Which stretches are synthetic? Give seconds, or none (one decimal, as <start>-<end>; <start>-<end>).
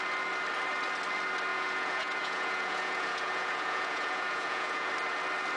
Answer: 1.5-4.9